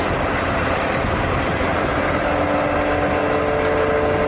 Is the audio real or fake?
real